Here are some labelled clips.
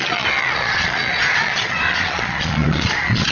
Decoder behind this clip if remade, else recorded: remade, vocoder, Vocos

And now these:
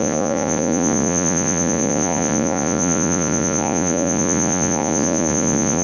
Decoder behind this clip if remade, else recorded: remade, vocoder, Vocos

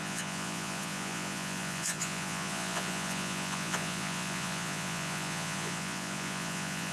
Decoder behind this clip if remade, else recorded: remade, vocoder, Vocos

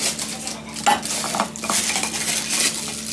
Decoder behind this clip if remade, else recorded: recorded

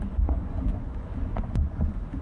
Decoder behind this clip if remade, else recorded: remade, vocoder, Vocos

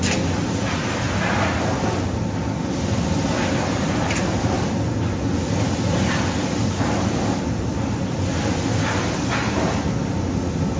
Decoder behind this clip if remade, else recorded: recorded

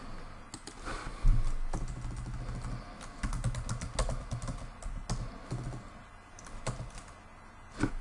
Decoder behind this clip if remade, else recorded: recorded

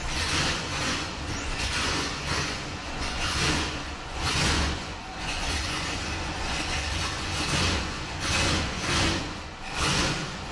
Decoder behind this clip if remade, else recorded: remade, vocoder, Vocos